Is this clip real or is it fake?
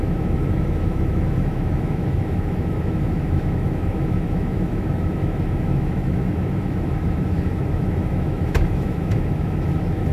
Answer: fake